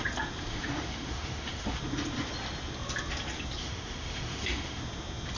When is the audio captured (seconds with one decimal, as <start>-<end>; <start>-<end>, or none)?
0.0-0.5; 1.8-3.6; 4.8-5.4